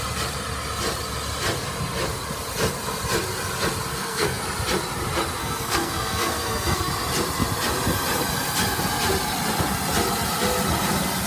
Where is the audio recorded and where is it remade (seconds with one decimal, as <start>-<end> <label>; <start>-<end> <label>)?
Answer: 0.0-3.9 recorded; 3.9-4.4 remade; 4.4-5.4 recorded; 5.4-6.9 remade; 6.9-11.3 recorded